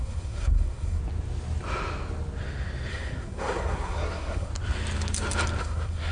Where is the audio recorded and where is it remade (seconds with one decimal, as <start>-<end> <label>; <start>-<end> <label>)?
0.0-1.0 remade; 1.0-2.9 recorded; 2.9-4.5 remade; 4.5-5.6 recorded; 5.6-6.1 remade